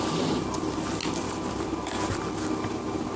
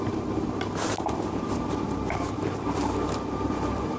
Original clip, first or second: first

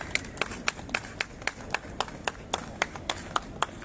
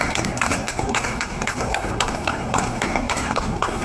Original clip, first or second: first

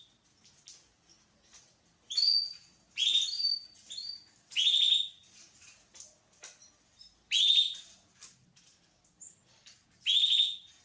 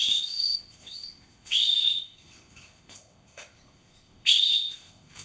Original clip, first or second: first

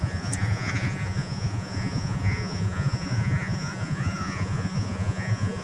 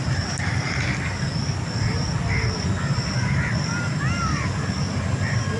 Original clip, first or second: second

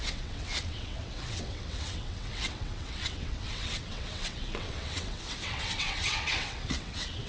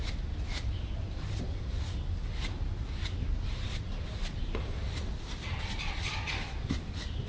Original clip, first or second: second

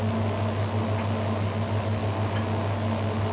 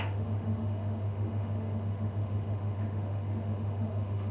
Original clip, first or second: first